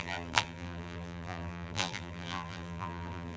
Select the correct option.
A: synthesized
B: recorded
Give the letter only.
A